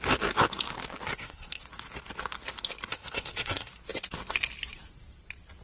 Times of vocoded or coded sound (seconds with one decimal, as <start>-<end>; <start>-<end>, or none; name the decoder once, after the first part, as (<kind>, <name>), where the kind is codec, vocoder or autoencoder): 1.1-1.6 (codec, SNAC); 2.9-3.7